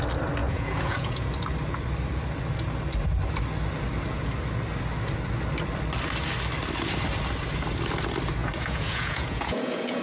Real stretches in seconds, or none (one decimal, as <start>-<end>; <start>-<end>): 0.0-0.4; 1.3-8.4